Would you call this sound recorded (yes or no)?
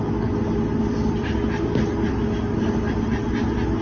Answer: yes